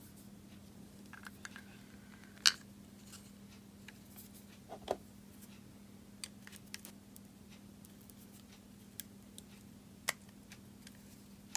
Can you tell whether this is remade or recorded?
recorded